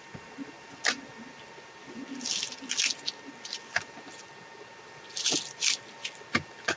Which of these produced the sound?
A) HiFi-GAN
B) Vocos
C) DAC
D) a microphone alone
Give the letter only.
D